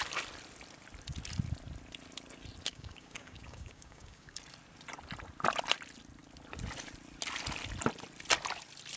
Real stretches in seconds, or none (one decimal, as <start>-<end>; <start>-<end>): 0.0-2.7; 4.4-9.0